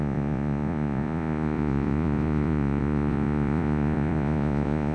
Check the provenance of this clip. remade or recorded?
remade